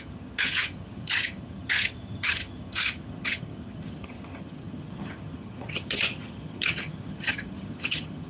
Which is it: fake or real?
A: fake